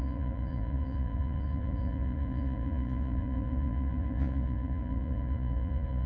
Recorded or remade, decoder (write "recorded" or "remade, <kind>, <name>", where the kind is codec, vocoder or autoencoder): remade, vocoder, Vocos